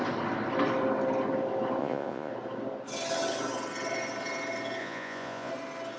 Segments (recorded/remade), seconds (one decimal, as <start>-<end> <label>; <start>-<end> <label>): 0.0-1.8 recorded; 1.8-2.3 remade; 2.3-4.8 recorded; 4.8-5.5 remade; 5.5-6.0 recorded